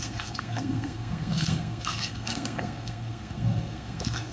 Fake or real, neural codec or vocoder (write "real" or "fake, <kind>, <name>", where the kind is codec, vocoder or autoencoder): fake, codec, SNAC